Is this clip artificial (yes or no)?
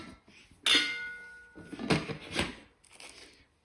no